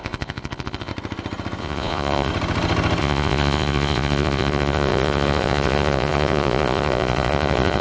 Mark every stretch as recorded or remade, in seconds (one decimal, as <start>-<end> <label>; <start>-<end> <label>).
0.0-0.9 remade; 0.9-1.6 recorded; 1.6-2.3 remade; 2.3-3.0 recorded; 3.0-7.8 remade

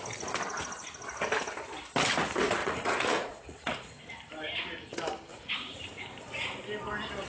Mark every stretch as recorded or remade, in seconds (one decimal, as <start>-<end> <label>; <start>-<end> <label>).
0.0-2.6 recorded; 2.6-4.0 remade; 4.0-5.3 recorded; 5.3-6.0 remade; 6.0-7.3 recorded

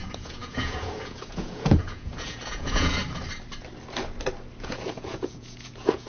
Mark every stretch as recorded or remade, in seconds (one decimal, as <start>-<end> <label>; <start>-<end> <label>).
0.0-3.0 remade; 3.0-4.6 recorded; 4.6-6.1 remade